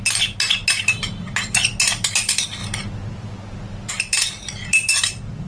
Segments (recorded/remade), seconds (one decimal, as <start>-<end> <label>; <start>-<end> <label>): 0.0-5.5 recorded